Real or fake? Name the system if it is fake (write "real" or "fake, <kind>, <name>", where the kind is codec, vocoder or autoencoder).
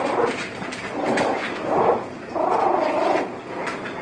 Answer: real